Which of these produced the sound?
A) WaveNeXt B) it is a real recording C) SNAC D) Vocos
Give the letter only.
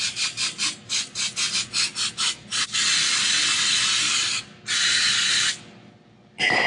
B